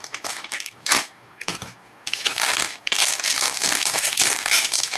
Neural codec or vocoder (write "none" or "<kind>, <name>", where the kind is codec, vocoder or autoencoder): codec, DAC